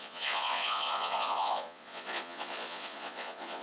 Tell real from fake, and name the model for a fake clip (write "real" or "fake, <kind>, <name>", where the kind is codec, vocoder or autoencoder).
fake, vocoder, Vocos